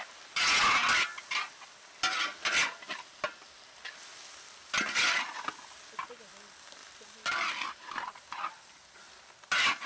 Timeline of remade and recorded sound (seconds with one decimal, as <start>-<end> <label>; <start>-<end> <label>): 0.0-6.8 recorded; 6.8-7.5 remade; 7.5-9.9 recorded